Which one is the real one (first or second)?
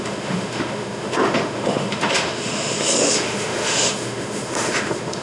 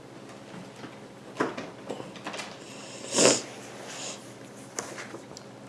second